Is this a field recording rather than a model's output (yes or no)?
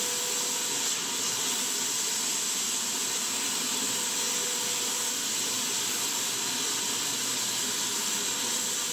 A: yes